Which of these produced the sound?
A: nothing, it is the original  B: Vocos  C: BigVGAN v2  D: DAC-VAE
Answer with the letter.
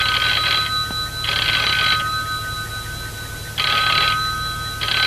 A